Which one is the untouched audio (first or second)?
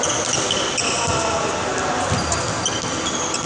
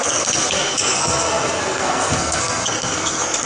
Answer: first